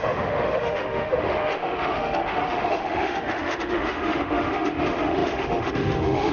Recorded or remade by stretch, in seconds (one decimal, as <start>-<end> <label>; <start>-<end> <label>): 0.0-6.3 remade